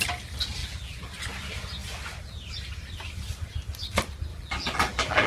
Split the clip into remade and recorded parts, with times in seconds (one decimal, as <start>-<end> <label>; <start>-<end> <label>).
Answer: 0.0-0.6 recorded; 0.6-1.1 remade; 1.1-4.3 recorded; 4.3-5.3 remade